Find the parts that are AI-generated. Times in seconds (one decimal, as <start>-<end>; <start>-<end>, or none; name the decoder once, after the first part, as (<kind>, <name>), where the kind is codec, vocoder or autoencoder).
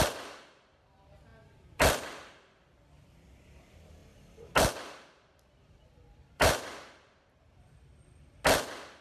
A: 0.0-4.0 (vocoder, BigVGAN v2); 4.7-7.9